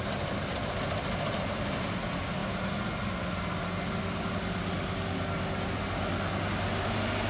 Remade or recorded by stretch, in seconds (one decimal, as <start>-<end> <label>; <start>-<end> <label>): 0.0-7.3 recorded